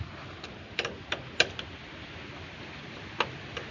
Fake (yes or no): no